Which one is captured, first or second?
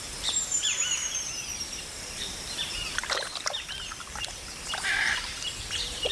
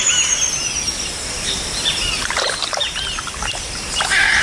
second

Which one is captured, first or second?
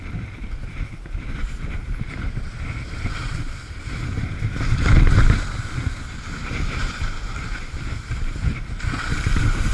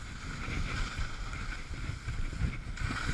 second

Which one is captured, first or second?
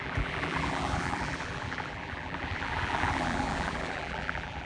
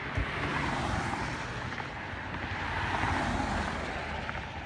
second